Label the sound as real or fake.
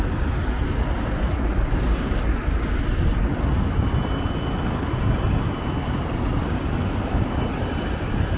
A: real